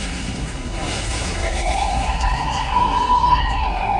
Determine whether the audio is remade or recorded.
remade